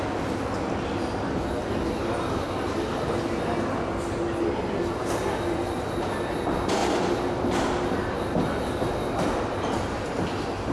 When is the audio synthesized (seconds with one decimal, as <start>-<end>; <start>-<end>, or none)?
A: none